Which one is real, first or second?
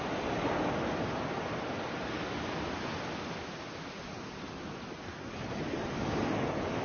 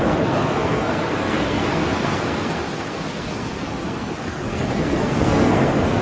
first